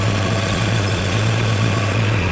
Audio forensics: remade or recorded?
remade